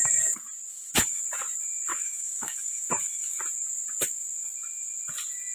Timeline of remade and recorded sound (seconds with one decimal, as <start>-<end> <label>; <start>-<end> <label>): 0.0-0.7 recorded; 0.7-1.2 remade; 1.2-1.9 recorded; 1.9-3.4 remade; 3.4-5.5 recorded